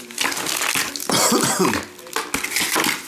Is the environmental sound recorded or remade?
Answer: recorded